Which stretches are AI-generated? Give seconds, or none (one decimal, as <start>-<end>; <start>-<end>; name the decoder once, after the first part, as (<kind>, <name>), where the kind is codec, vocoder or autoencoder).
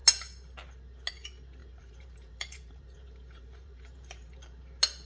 1.6-4.6 (vocoder, BigVGAN v2)